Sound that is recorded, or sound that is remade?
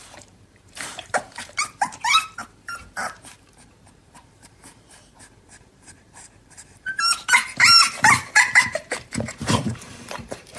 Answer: remade